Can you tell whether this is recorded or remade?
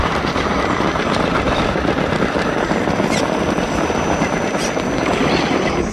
recorded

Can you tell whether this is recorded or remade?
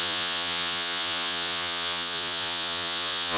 remade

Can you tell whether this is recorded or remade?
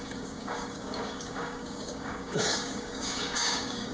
remade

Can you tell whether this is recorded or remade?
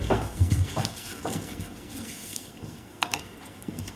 remade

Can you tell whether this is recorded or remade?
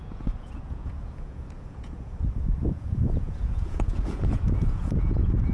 remade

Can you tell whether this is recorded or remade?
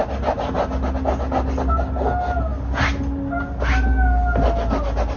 recorded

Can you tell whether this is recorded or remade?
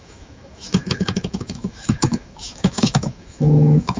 remade